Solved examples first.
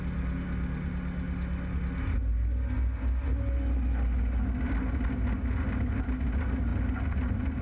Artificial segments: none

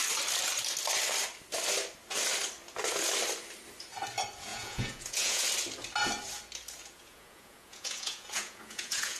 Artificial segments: 4.5-5.4 (vocoder, Vocos); 6.8-9.2

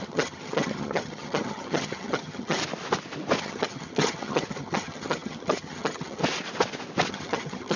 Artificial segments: 0.0-2.6 (vocoder, HiFi-GAN); 3.4-6.2; 7.1-7.8

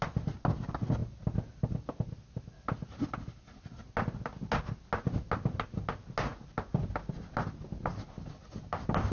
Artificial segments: none

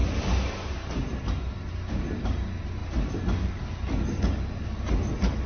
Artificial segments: none

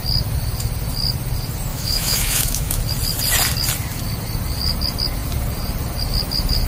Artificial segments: 1.7-2.8 (autoencoder, DAC-VAE)

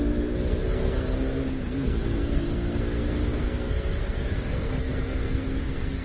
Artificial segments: 0.0-6.0 (codec, SNAC)

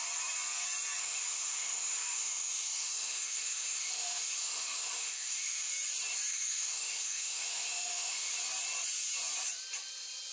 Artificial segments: 1.0-5.7 (autoencoder, DAC-VAE); 6.3-8.3